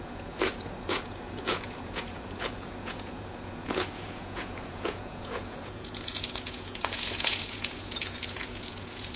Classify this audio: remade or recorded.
remade